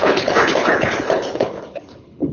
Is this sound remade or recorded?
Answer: remade